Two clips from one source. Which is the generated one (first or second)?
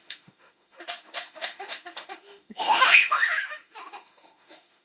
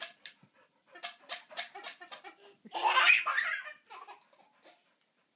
first